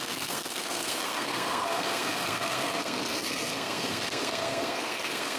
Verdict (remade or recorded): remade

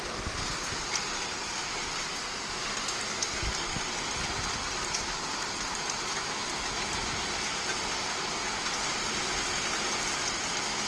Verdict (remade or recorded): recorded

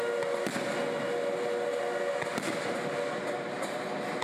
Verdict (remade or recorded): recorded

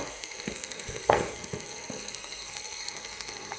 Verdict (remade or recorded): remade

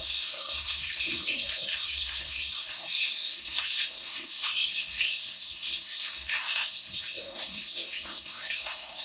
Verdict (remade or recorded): remade